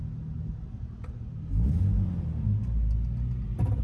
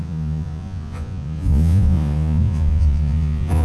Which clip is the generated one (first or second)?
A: second